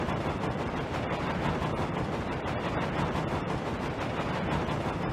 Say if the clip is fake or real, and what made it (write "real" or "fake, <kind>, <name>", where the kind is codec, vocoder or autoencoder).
fake, vocoder, BigVGAN v2